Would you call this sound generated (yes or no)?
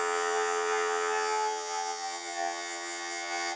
yes